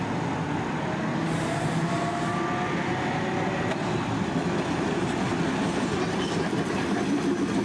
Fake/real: real